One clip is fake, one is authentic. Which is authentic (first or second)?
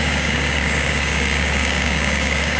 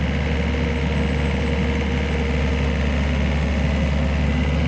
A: second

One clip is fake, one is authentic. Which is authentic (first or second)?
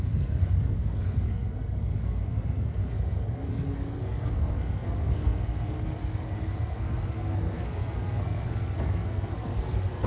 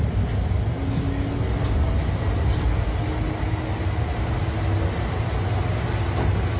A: second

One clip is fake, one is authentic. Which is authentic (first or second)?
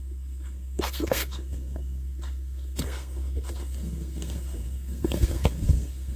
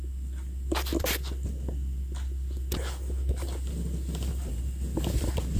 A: second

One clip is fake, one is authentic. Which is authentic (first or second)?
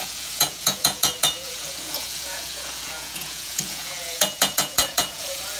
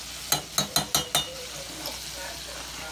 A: second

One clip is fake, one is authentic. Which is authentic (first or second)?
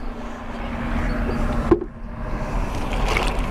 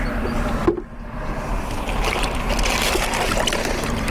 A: first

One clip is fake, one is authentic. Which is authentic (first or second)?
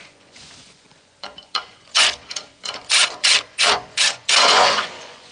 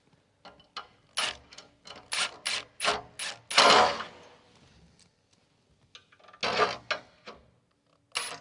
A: second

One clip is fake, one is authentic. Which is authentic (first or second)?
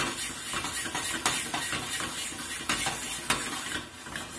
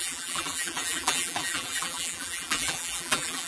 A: first